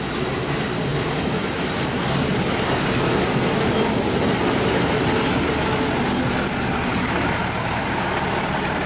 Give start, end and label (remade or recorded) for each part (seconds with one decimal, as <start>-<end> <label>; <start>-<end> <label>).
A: 0.0-0.9 recorded; 0.9-1.5 remade; 1.5-8.9 recorded